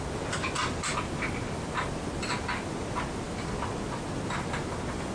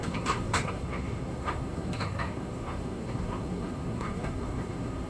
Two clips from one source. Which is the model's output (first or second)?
second